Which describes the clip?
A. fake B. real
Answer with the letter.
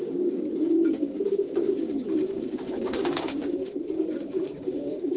A